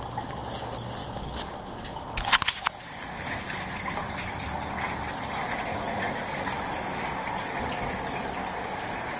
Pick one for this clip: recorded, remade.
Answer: recorded